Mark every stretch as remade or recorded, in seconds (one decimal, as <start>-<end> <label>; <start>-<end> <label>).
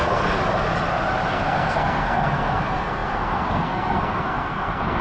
0.0-0.4 remade; 0.4-1.3 recorded; 1.3-5.0 remade